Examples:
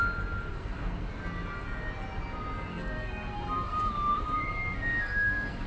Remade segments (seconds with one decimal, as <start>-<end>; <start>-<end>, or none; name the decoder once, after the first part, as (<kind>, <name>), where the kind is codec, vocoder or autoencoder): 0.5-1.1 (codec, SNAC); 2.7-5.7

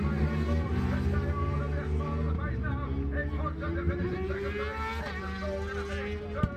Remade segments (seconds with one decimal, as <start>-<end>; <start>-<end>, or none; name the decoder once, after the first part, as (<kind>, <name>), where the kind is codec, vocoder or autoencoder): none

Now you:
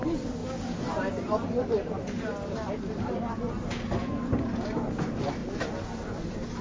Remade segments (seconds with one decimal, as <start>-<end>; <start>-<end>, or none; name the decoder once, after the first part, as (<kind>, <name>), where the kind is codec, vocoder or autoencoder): none

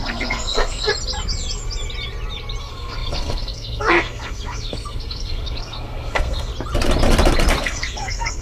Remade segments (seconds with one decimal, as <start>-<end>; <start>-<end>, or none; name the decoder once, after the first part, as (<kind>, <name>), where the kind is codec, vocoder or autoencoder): 0.0-0.9 (codec, SNAC); 2.6-6.5; 7.6-8.4